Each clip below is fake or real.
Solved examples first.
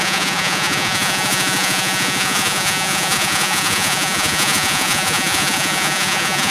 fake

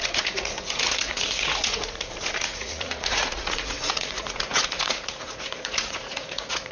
fake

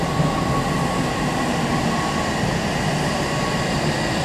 real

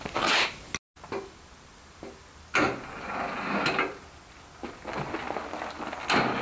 real